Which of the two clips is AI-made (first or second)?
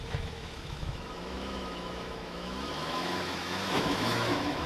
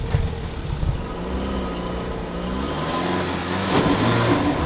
first